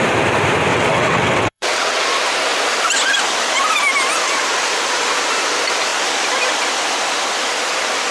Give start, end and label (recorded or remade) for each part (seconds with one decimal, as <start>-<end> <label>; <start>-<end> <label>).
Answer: 0.0-0.7 recorded; 0.7-2.0 remade; 2.0-8.1 recorded